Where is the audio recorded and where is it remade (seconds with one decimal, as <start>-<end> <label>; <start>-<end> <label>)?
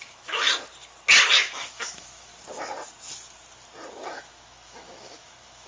0.0-0.4 remade; 0.4-1.4 recorded; 1.4-2.3 remade; 2.3-4.1 recorded; 4.1-5.7 remade